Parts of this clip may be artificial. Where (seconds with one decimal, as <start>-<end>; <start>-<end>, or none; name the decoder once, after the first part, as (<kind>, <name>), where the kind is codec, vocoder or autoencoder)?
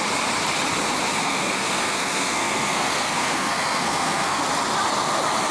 1.1-4.4 (codec, SNAC)